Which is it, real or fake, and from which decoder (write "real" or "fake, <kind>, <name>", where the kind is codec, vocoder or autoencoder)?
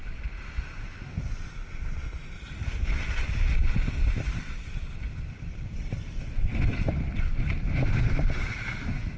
real